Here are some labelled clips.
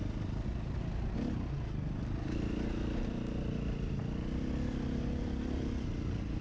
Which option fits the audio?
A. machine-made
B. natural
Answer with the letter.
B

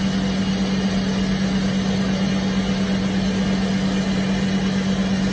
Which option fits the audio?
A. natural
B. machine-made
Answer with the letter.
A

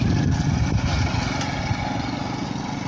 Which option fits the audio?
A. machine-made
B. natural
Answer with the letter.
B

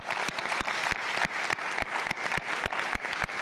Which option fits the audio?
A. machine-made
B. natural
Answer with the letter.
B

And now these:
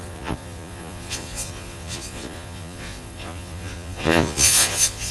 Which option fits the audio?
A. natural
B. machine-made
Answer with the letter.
B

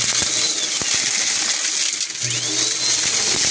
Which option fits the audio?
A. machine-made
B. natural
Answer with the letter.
B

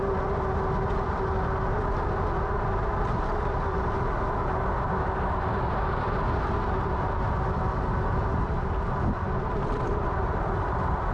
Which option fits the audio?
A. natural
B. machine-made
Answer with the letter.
A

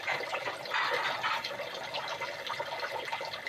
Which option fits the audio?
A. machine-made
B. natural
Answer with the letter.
B